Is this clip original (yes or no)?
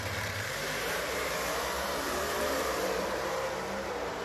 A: no